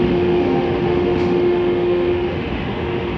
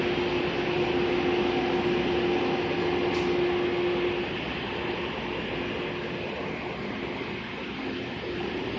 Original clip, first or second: second